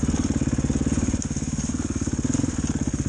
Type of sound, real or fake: real